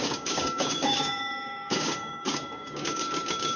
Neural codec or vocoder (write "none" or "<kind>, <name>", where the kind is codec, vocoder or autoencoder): codec, DAC